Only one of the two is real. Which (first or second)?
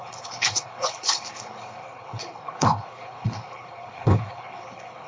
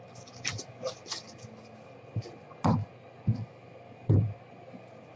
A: second